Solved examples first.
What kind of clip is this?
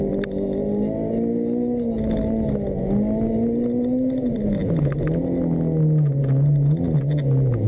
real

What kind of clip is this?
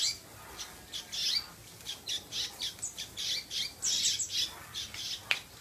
real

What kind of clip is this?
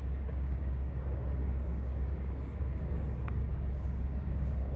fake